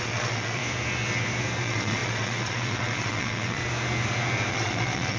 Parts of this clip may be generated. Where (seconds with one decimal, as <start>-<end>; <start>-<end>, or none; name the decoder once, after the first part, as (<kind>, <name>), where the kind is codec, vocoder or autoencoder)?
0.0-0.6 (vocoder, WaveNeXt); 1.6-3.6; 4.5-5.2